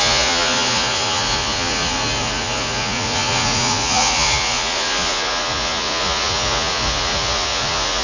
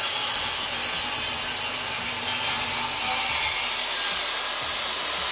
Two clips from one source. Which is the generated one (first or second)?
first